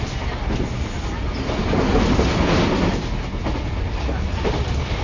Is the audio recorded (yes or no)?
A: yes